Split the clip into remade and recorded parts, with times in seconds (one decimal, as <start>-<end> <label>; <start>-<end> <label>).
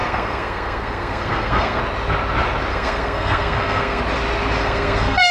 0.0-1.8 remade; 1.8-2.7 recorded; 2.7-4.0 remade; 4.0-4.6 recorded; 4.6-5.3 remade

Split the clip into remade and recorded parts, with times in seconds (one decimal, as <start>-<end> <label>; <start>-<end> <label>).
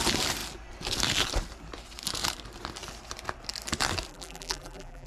0.0-4.1 recorded; 4.1-5.1 remade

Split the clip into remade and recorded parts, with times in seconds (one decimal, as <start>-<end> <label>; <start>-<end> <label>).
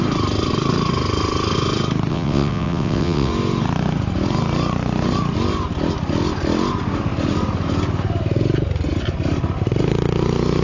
0.0-2.1 recorded; 2.1-3.3 remade; 3.3-10.6 recorded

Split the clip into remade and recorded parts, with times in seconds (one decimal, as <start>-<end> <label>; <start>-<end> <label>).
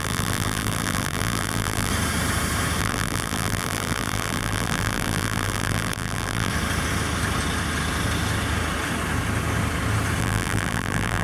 0.0-1.9 remade; 1.9-2.8 recorded; 2.8-6.5 remade; 6.5-10.2 recorded; 10.2-11.2 remade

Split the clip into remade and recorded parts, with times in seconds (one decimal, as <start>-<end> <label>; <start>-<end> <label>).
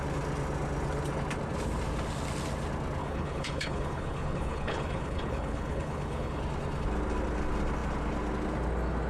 0.0-3.0 recorded; 3.0-6.4 remade; 6.4-9.1 recorded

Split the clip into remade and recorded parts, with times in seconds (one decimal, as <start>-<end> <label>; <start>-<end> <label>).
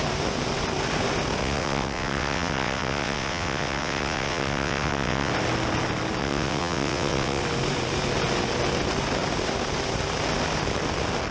0.0-1.4 recorded; 1.4-5.3 remade; 5.3-6.2 recorded; 6.2-7.4 remade; 7.4-11.3 recorded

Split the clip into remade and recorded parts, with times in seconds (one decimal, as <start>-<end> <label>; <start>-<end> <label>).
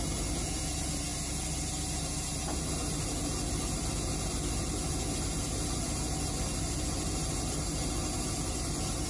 0.0-9.1 recorded